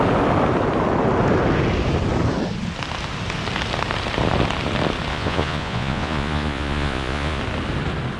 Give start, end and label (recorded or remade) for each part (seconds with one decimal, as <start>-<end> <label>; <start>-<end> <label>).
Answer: 0.0-5.1 recorded; 5.1-7.4 remade; 7.4-8.2 recorded